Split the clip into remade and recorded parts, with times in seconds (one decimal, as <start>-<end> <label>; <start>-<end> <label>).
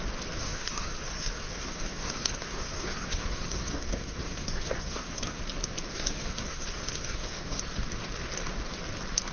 0.0-0.4 recorded; 0.4-5.4 remade; 5.4-5.9 recorded; 5.9-7.6 remade; 7.6-9.3 recorded